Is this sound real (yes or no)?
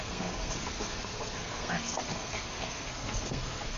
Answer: no